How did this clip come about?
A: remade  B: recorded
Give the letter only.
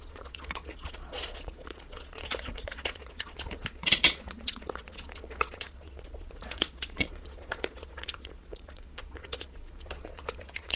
A